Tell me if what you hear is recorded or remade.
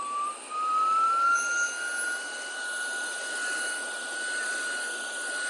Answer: recorded